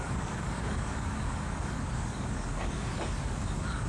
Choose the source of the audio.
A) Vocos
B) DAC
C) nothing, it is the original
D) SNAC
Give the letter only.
B